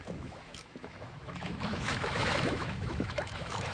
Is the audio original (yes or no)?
no